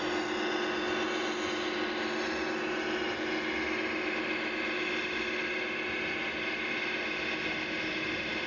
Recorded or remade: recorded